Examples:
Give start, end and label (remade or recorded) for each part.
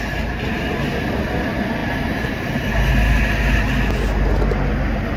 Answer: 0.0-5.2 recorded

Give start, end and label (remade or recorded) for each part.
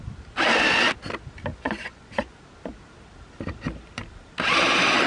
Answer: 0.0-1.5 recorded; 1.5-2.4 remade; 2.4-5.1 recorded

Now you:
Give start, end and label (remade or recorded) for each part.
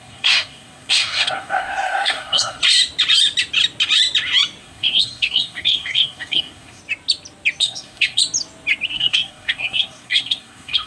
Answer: 0.0-2.6 remade; 2.6-4.6 recorded; 4.6-6.8 remade; 6.8-7.6 recorded; 7.6-8.2 remade; 8.2-8.9 recorded; 8.9-10.9 remade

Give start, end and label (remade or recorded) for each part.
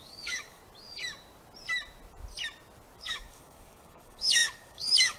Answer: 0.0-0.6 remade; 0.6-3.0 recorded; 3.0-5.2 remade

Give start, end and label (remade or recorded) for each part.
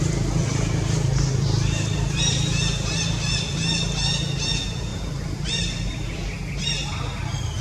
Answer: 0.0-0.5 recorded; 0.5-2.6 remade; 2.6-4.9 recorded; 4.9-5.5 remade; 5.5-7.6 recorded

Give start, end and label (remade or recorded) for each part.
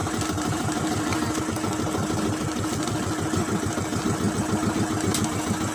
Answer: 0.0-1.4 remade; 1.4-5.7 recorded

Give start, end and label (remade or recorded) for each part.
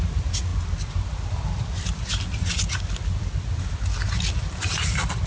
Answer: 0.0-5.3 recorded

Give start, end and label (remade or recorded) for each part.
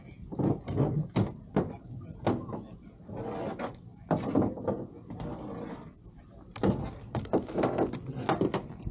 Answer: 0.0-8.9 recorded